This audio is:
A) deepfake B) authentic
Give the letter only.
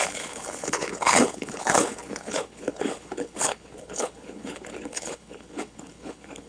A